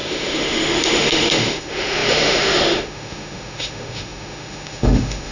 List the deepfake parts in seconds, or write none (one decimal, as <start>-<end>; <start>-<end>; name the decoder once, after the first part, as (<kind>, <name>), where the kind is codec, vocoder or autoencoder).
0.0-5.3 (autoencoder, DAC-VAE)